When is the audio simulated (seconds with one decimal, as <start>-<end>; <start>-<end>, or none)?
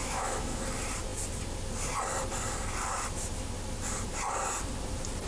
0.0-0.6